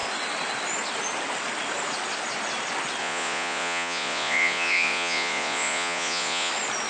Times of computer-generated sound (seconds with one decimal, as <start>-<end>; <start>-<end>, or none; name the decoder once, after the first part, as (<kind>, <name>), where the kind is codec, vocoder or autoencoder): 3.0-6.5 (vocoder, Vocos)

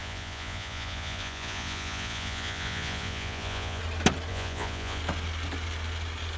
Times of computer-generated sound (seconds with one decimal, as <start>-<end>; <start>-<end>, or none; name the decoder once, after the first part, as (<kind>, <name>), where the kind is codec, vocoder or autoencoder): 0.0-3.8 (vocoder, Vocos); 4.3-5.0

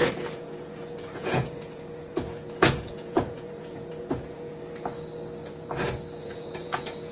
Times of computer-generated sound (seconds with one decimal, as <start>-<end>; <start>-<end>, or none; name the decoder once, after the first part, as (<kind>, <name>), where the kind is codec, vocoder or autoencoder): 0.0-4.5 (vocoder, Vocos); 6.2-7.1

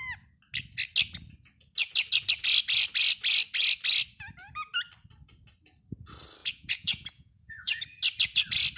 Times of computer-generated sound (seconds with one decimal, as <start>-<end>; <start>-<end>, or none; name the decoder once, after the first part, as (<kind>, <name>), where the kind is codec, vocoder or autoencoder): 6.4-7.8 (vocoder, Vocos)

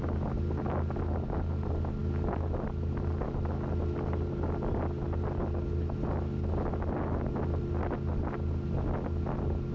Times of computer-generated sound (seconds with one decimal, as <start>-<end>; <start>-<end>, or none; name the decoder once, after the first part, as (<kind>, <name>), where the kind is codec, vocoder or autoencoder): none